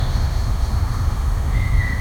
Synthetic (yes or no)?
yes